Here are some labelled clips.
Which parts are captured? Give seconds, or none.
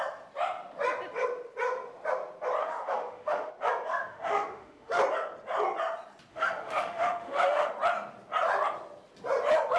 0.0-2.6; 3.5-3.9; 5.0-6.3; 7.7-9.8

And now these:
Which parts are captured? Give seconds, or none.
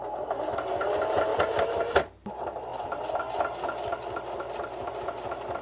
0.0-5.6